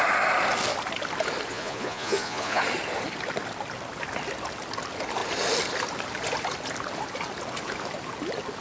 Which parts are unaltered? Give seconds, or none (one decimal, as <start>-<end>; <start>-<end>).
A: 0.0-1.5; 2.6-8.6